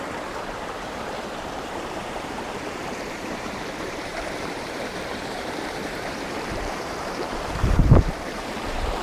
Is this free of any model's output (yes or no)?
no